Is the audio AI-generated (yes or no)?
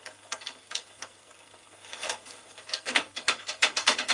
yes